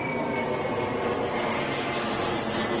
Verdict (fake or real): real